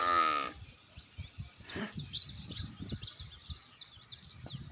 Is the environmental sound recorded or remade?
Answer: recorded